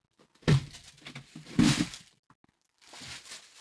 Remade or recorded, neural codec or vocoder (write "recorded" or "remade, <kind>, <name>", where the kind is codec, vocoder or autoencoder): recorded